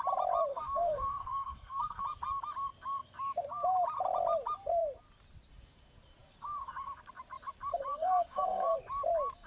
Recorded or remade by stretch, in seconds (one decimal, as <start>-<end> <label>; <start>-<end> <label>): 0.0-0.5 recorded; 0.5-2.0 remade; 2.0-7.9 recorded; 7.9-8.8 remade; 8.8-9.5 recorded